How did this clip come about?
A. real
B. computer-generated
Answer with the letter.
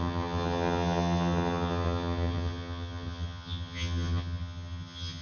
B